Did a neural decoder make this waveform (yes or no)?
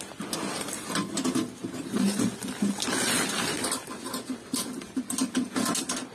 no